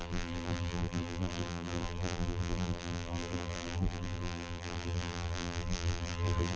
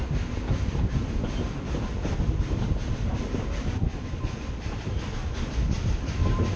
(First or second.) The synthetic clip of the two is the first